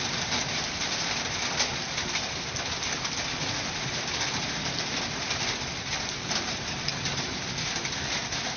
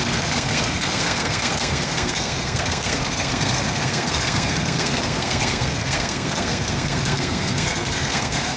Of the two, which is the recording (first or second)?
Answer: first